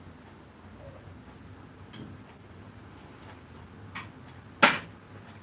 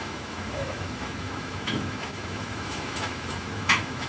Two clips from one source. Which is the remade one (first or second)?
second